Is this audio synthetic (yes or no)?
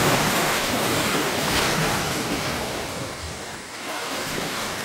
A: yes